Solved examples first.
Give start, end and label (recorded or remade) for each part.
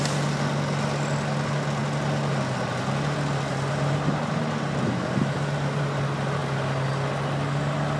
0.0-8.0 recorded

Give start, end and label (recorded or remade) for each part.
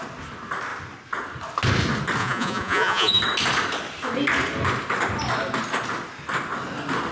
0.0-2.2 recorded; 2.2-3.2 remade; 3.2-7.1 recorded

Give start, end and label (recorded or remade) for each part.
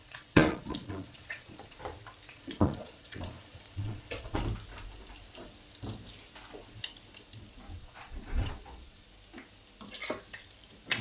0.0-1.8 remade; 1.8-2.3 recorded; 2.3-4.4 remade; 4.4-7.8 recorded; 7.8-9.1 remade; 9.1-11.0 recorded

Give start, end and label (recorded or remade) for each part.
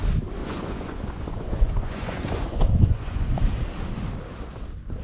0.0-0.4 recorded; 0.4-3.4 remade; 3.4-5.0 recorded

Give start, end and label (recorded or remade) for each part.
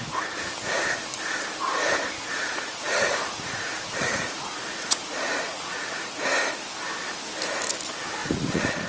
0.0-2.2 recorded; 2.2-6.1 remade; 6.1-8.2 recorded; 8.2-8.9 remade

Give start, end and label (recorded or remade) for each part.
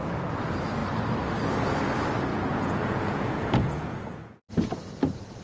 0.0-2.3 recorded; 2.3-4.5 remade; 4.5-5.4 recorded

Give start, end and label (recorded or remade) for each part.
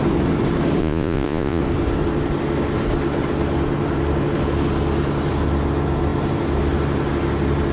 0.0-0.8 recorded; 0.8-1.6 remade; 1.6-7.7 recorded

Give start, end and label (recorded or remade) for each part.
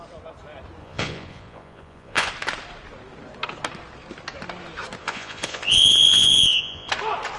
0.0-0.8 recorded; 0.8-2.3 remade; 2.3-5.0 recorded; 5.0-6.9 remade; 6.9-7.4 recorded